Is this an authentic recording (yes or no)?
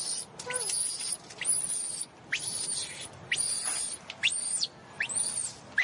yes